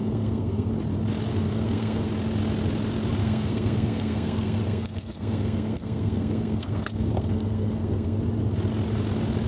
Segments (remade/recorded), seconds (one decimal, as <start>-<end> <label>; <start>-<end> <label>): 0.0-0.7 remade; 0.7-1.3 recorded; 1.3-2.1 remade; 2.1-3.2 recorded; 3.2-8.2 remade; 8.2-9.5 recorded